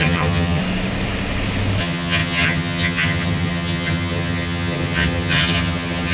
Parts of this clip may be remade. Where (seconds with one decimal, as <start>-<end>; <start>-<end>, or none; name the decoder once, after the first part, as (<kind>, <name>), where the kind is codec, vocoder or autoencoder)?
0.0-0.6 (vocoder, HiFi-GAN); 1.8-6.1